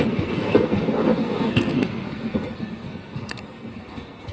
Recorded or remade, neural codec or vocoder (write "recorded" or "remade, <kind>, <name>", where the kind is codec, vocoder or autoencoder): remade, codec, SNAC